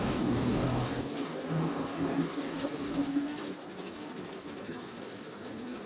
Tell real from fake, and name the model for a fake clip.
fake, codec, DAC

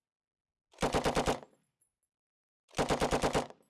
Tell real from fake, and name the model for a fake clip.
real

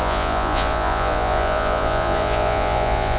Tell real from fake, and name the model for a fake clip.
fake, vocoder, Vocos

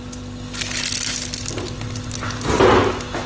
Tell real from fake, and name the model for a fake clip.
real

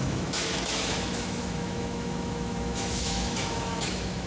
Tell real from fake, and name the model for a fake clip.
fake, autoencoder, DAC-VAE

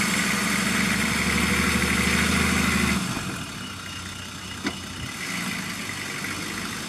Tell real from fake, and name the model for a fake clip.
real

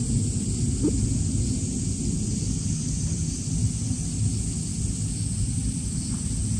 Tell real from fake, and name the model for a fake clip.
real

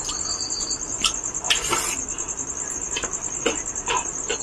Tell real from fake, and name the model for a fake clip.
real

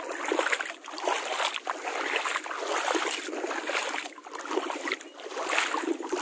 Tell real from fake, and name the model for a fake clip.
real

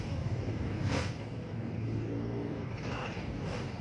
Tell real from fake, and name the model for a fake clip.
fake, codec, DAC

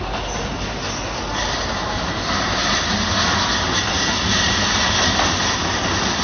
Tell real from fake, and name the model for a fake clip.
real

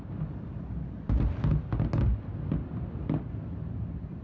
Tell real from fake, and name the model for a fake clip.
real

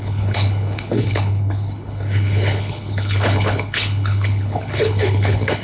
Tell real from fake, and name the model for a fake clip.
fake, codec, HILCodec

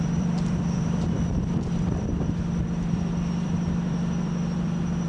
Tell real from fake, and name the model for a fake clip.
fake, vocoder, BigVGAN v2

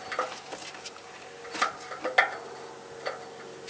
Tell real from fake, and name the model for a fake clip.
real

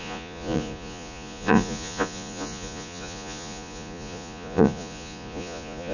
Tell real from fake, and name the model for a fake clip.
fake, vocoder, Vocos